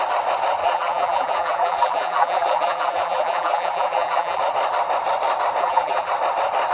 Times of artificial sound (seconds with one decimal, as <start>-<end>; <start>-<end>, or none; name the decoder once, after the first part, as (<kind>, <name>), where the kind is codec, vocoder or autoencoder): 0.6-4.4 (vocoder, BigVGAN v2); 5.6-6.1